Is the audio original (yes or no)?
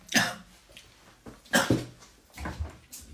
yes